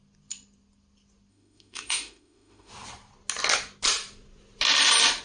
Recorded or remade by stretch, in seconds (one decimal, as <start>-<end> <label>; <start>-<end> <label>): 0.0-1.3 recorded; 1.3-2.7 remade; 2.7-5.2 recorded